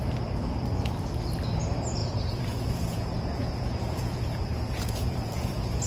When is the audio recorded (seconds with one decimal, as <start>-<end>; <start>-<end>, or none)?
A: 0.0-2.0; 5.5-5.9